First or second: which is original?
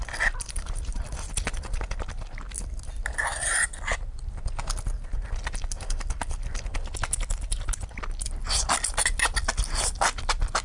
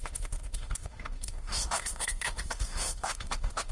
first